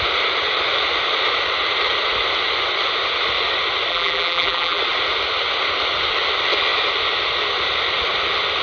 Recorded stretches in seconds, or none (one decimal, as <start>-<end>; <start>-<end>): 0.0-3.9; 4.8-8.6